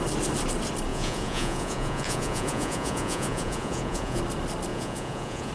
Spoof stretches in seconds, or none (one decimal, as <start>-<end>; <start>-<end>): 0.9-4.2; 4.7-5.5